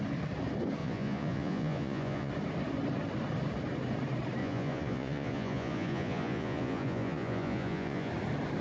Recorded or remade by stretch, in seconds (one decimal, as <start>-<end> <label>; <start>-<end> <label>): 0.0-0.8 recorded; 0.8-2.3 remade; 2.3-4.4 recorded; 4.4-8.1 remade; 8.1-8.6 recorded